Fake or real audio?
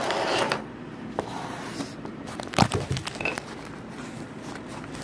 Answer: fake